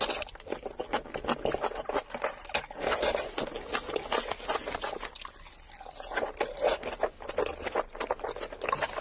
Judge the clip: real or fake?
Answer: real